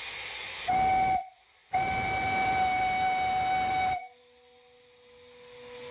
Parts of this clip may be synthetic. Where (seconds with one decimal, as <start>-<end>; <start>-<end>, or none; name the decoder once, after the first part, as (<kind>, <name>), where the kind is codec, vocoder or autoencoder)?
none